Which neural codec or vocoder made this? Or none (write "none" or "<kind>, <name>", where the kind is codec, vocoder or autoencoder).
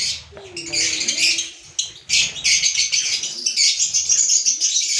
none